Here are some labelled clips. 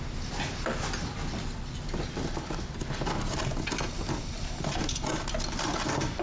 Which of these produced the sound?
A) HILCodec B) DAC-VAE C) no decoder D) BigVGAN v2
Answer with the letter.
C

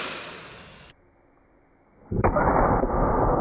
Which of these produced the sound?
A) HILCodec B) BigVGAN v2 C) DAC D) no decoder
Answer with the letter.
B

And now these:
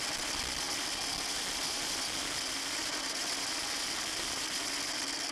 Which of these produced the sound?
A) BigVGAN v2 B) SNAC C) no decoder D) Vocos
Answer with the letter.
C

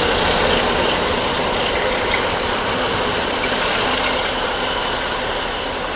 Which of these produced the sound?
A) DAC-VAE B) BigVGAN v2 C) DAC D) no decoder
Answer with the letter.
D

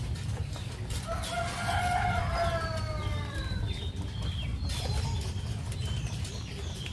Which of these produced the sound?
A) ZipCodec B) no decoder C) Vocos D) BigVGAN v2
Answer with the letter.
B